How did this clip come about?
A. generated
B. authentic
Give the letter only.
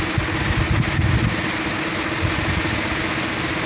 B